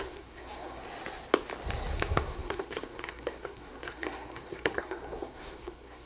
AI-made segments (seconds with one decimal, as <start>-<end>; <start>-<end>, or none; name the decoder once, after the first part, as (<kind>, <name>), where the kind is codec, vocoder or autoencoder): 0.0-0.8 (codec, SNAC); 1.9-6.1